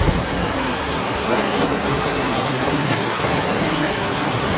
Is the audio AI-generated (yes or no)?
yes